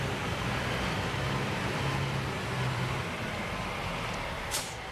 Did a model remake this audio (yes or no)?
yes